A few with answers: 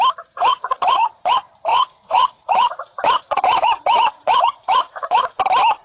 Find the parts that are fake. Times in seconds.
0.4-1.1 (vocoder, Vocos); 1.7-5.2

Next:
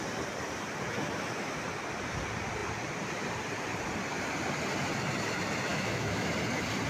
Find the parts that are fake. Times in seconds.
5.7-6.3 (autoencoder, DAC-VAE)